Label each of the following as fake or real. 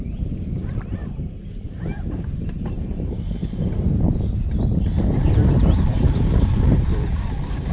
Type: fake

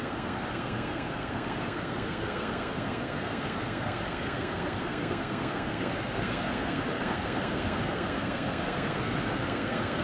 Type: fake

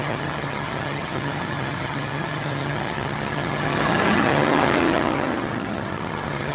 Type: fake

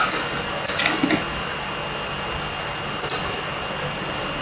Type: real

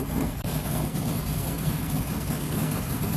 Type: fake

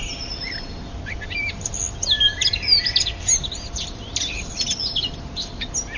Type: real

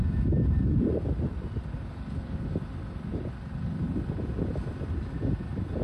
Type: real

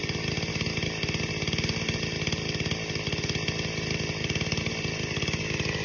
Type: real